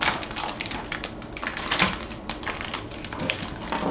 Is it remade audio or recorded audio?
remade